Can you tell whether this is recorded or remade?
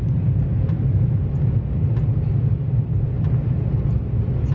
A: recorded